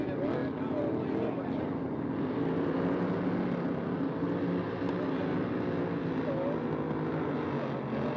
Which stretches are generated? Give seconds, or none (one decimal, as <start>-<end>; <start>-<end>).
none